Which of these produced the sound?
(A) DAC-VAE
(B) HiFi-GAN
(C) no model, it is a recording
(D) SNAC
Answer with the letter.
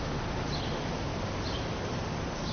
C